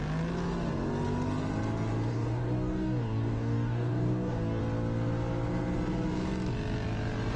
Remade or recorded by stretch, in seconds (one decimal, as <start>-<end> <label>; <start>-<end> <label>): 0.0-2.1 recorded; 2.1-4.6 remade; 4.6-7.4 recorded